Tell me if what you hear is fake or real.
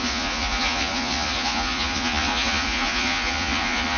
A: fake